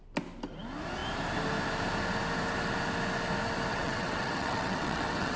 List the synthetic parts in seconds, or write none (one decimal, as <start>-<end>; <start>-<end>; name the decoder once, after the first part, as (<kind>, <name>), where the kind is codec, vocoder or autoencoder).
3.7-5.4 (vocoder, WaveNeXt)